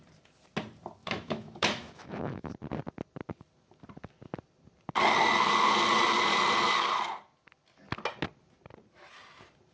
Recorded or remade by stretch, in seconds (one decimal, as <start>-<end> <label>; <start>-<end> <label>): 0.0-1.0 recorded; 1.0-2.5 remade; 2.5-9.7 recorded